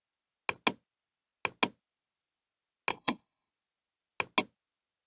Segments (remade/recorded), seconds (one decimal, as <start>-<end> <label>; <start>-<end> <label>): 0.0-2.9 recorded; 2.9-3.5 remade; 3.5-5.1 recorded